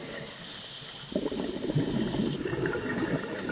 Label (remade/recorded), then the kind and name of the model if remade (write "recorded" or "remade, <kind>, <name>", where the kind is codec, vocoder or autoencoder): recorded